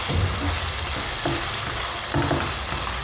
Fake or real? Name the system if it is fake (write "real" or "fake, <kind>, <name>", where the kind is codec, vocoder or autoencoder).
real